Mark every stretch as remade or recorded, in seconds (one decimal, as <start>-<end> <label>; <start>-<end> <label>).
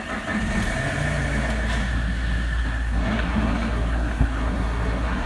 0.0-1.8 recorded; 1.8-5.3 remade